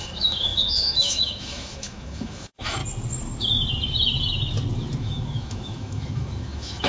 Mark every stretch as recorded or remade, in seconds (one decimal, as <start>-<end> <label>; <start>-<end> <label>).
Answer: 0.0-2.8 remade; 2.8-5.0 recorded; 5.0-6.9 remade